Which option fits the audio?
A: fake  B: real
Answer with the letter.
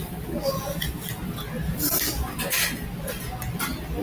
B